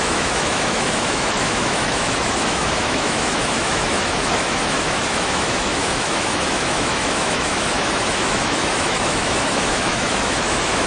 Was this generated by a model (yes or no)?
yes